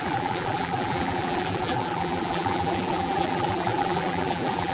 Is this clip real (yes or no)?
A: no